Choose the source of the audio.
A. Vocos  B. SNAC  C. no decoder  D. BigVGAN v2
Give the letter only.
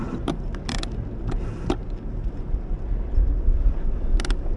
C